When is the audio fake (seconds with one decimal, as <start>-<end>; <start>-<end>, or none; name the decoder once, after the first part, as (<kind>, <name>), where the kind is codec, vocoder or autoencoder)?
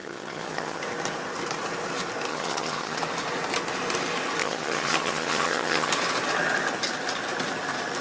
0.0-0.8 (vocoder, HiFi-GAN); 2.3-3.0; 4.4-5.9